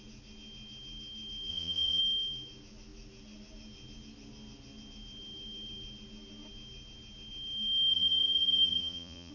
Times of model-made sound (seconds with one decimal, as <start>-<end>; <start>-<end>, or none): 1.5-2.0; 7.9-9.3